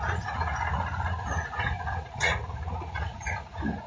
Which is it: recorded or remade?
remade